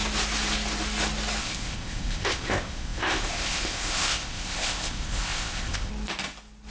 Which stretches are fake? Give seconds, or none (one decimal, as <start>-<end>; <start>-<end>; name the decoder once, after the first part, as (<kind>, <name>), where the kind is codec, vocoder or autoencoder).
1.4-5.9 (codec, ZipCodec)